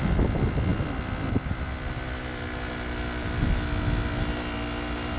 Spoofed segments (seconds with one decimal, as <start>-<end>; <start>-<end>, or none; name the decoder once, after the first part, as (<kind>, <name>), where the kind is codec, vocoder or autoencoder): none

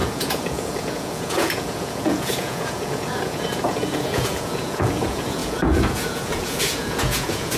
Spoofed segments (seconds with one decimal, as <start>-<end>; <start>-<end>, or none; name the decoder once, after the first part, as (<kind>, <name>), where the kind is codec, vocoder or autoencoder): 0.0-7.6 (vocoder, Vocos)